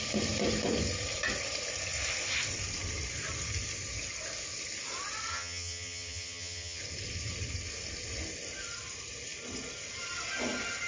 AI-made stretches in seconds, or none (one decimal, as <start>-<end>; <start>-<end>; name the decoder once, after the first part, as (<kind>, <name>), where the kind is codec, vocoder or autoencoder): 5.3-6.8 (vocoder, HiFi-GAN)